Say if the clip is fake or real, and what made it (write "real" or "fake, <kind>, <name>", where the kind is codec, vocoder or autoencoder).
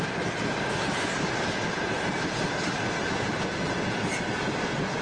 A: real